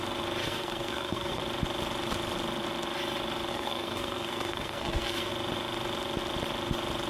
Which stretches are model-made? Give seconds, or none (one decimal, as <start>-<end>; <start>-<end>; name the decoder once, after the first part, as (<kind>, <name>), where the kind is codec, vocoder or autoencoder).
0.4-1.4 (codec, SNAC); 3.5-5.3